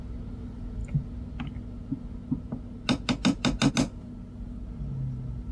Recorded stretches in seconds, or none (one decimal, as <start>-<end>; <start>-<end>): 0.0-5.5